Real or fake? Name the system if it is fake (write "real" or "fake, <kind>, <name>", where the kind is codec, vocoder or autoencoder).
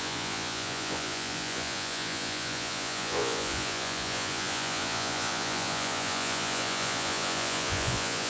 fake, vocoder, Vocos